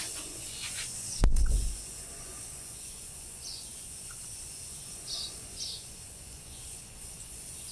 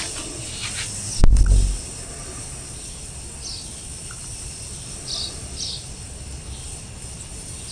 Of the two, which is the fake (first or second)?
first